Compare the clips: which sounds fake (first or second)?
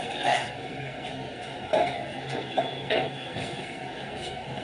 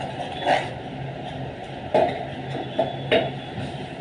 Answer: first